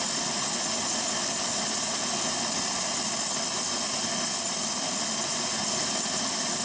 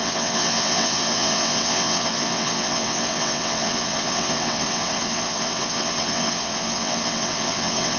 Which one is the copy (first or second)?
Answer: second